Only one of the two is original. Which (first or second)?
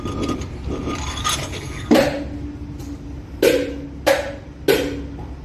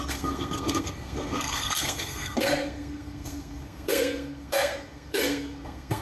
first